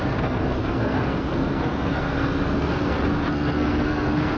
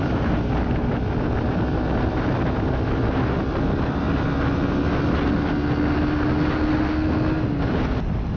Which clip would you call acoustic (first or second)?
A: second